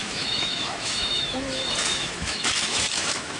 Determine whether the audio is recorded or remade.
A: remade